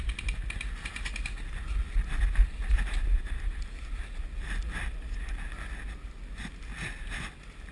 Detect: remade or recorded recorded